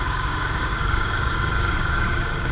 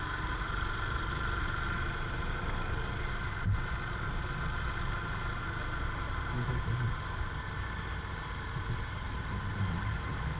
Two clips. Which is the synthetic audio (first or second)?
first